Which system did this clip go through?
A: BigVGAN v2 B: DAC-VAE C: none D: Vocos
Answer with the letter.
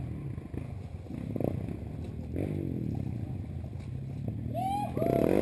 C